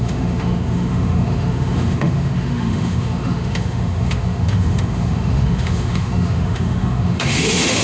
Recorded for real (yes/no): no